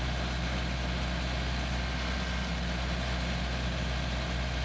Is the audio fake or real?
real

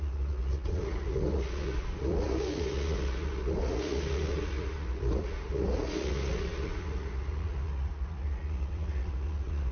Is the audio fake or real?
fake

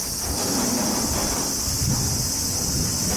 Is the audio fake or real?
real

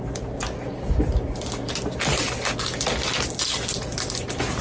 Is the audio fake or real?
real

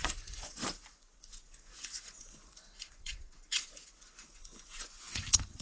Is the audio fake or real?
fake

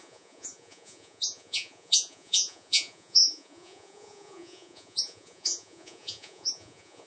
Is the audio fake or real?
fake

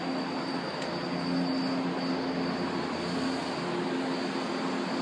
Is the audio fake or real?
real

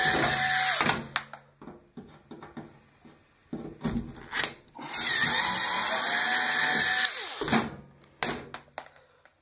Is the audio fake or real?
real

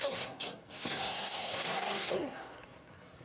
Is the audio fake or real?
fake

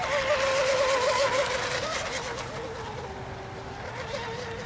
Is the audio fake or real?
real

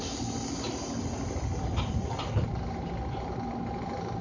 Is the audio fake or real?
fake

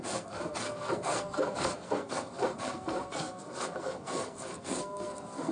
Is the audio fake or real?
fake